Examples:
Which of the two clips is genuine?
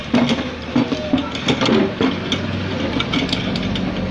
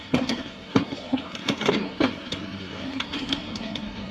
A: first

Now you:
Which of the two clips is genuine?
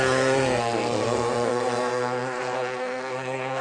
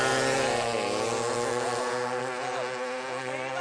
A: second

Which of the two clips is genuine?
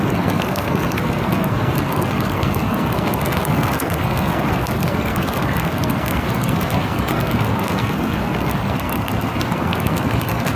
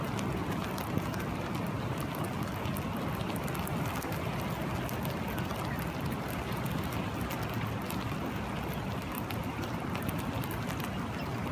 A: second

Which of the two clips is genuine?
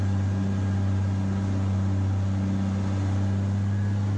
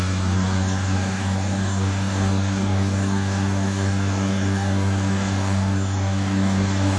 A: first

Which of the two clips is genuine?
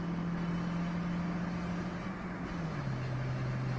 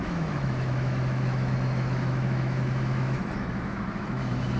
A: first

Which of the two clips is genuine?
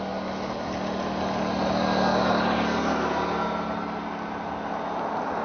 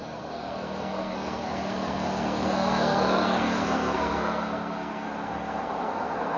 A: first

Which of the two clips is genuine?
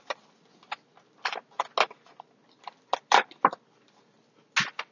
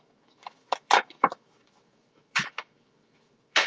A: first